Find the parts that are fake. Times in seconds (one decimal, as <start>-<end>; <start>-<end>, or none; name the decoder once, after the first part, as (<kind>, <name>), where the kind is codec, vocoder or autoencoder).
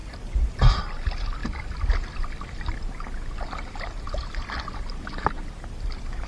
0.0-0.7 (vocoder, BigVGAN v2)